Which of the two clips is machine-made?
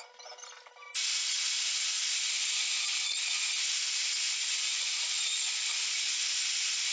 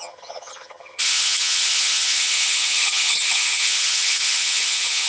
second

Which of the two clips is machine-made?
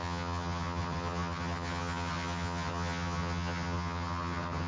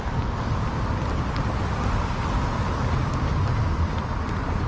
first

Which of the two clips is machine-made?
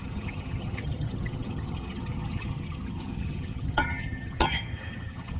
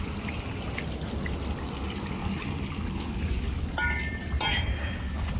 first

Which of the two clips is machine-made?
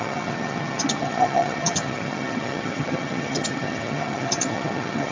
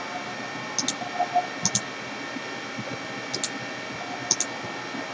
first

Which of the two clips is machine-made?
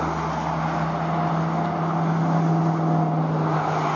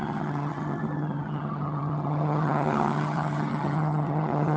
second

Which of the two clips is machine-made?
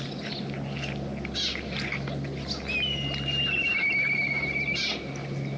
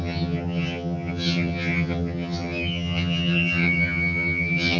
second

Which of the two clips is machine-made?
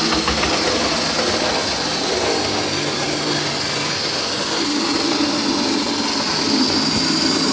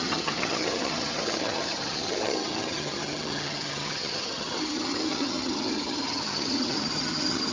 second